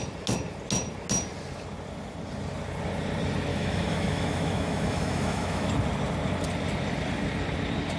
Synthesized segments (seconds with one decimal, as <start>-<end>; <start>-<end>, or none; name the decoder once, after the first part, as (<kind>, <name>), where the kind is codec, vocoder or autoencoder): 3.5-5.7 (autoencoder, DAC-VAE)